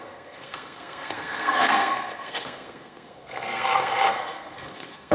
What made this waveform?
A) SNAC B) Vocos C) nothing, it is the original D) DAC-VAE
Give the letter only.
A